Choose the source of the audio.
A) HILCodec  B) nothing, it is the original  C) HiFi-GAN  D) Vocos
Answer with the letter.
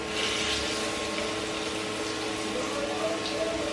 B